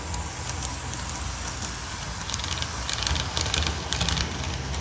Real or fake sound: real